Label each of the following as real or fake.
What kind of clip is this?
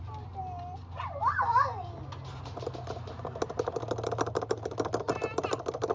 real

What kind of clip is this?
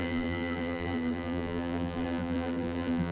fake